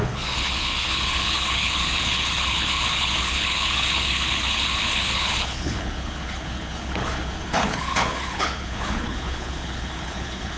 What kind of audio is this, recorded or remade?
remade